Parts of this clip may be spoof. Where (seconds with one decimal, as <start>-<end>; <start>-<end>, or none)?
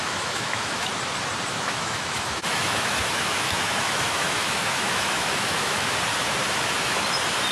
0.0-0.9; 1.5-5.9